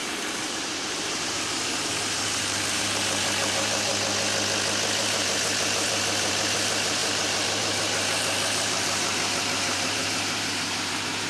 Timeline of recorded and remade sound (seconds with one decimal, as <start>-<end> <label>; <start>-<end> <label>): 0.0-3.9 remade; 3.9-5.0 recorded; 5.0-11.3 remade